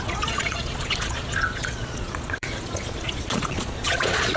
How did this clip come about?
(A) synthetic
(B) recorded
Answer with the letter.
A